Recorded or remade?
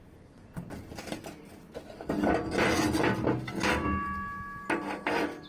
recorded